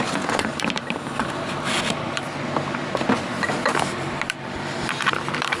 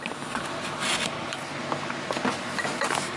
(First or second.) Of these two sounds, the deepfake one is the first